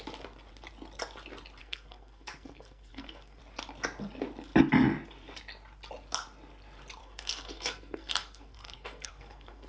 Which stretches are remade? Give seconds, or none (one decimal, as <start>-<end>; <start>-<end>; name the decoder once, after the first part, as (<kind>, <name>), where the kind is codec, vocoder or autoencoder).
1.6-3.4 (codec, SNAC); 7.0-9.7